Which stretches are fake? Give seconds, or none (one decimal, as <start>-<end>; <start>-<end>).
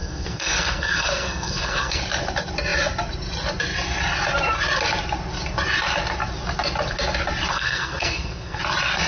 0.0-2.0; 7.5-8.6